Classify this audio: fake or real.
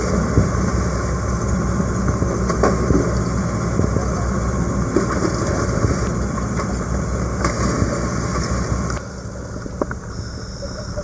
real